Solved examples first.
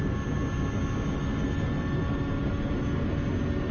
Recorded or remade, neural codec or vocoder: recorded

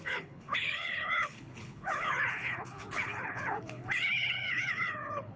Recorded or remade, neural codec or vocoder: remade, codec, HILCodec